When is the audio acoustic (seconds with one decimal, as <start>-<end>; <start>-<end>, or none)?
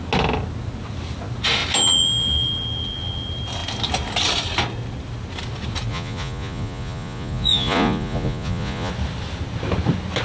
0.0-5.9; 8.9-10.2